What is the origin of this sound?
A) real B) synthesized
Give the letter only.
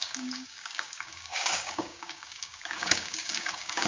B